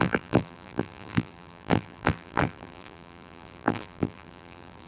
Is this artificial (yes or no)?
yes